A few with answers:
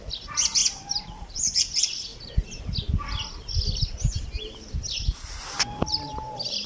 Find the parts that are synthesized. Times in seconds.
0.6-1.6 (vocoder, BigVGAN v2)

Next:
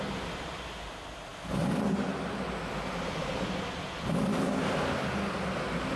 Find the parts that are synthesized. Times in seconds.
none

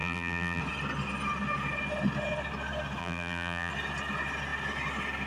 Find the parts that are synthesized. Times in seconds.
0.0-0.6 (vocoder, BigVGAN v2); 3.0-3.7